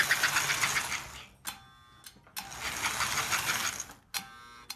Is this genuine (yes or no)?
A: yes